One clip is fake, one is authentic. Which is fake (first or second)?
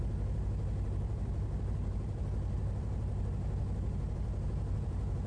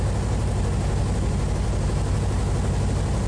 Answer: first